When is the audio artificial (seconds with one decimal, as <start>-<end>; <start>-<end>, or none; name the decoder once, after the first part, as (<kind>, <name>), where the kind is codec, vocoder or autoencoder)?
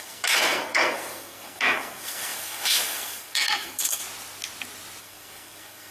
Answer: 0.0-4.0 (codec, SNAC); 5.0-5.9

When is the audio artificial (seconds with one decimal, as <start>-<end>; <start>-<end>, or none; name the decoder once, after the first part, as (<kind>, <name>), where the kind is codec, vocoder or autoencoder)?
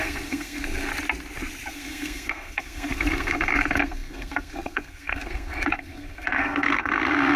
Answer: 0.0-0.9 (codec, SNAC); 1.7-7.4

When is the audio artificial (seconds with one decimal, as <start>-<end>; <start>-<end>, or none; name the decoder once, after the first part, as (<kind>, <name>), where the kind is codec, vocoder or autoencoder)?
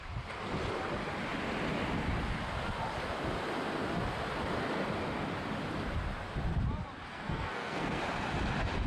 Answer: 7.1-8.0 (codec, SNAC)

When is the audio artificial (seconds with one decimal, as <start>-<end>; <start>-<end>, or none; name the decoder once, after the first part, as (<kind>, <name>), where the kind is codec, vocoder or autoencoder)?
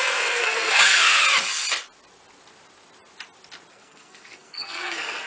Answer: 0.0-1.2 (codec, SNAC); 3.7-5.3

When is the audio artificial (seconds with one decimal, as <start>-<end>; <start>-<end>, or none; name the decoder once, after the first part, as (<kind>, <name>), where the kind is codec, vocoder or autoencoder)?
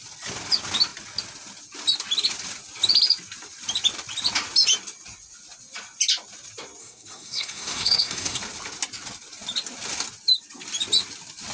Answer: 6.8-8.4 (codec, SNAC)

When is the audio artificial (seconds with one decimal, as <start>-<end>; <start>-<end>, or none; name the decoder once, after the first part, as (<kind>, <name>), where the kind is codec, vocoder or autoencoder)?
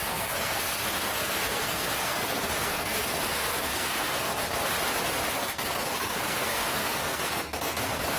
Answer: 0.0-4.4 (codec, SNAC); 5.3-8.2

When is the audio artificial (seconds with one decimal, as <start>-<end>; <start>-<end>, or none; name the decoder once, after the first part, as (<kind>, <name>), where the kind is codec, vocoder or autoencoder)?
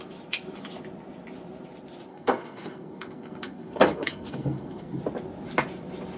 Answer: 2.1-5.0 (codec, SNAC)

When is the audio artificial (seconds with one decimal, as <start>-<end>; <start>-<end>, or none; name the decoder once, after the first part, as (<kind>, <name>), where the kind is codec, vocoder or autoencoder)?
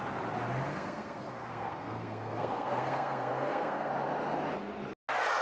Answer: 0.7-3.9 (codec, SNAC)